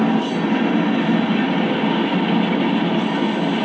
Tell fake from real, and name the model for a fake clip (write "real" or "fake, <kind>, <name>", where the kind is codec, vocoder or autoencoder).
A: real